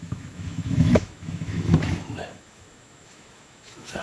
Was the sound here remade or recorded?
remade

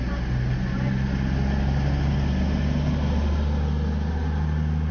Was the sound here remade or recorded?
recorded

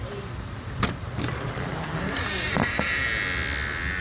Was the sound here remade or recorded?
recorded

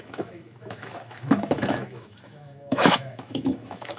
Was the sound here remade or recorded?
remade